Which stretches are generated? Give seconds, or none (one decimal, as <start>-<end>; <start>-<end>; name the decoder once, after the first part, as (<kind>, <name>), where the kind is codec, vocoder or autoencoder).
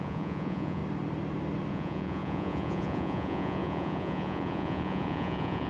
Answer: 0.0-0.8 (vocoder, Vocos); 1.7-5.7